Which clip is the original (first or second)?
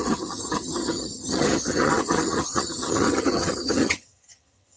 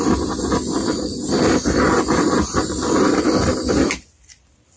second